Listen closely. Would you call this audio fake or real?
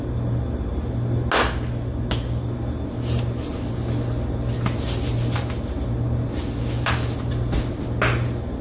real